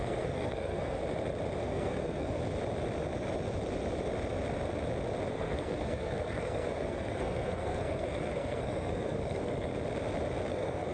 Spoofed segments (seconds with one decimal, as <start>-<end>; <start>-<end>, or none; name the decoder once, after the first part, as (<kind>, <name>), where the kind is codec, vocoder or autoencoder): 0.0-1.0 (codec, SNAC); 1.6-2.4; 5.3-9.7; 10.5-10.9